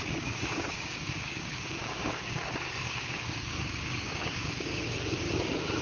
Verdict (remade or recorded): remade